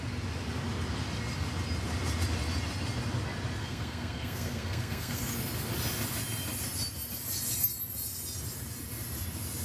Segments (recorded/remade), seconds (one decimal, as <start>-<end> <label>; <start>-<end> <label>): 0.0-3.6 recorded; 3.6-5.3 remade; 5.3-9.6 recorded